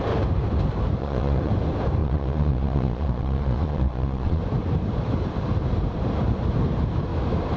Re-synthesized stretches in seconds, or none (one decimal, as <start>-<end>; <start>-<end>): 1.0-1.5; 2.0-4.4